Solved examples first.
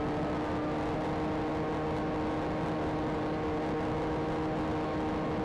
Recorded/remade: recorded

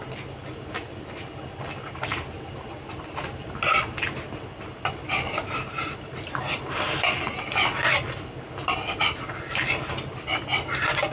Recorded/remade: recorded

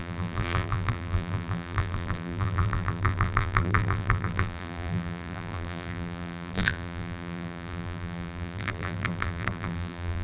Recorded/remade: remade